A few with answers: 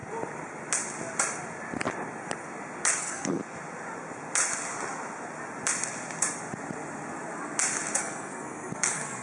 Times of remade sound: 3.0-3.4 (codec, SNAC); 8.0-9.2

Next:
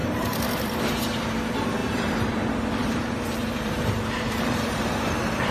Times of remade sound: 0.0-0.8 (vocoder, BigVGAN v2); 1.8-2.3; 2.8-4.9

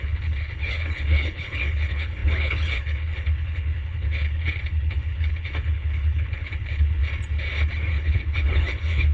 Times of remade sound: 0.0-7.0 (codec, HILCodec); 7.9-9.1